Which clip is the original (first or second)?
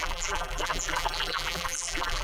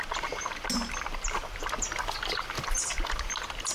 second